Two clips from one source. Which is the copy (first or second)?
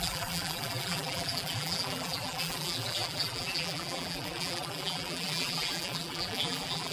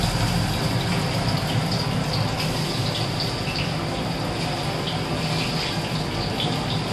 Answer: first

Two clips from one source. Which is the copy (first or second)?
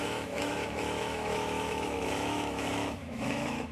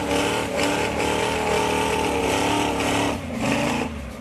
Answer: first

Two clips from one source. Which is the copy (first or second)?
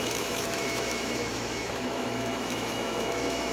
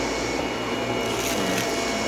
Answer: first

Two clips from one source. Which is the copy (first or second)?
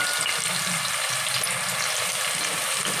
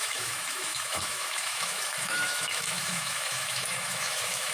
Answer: second